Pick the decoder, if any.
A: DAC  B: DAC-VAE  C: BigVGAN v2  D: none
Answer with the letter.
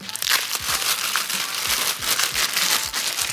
C